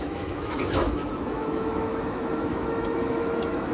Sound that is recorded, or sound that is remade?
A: remade